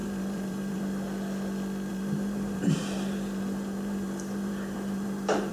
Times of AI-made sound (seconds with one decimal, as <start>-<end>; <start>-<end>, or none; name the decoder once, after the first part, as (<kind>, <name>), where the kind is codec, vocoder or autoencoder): 0.0-0.8 (vocoder, BigVGAN v2); 1.9-5.5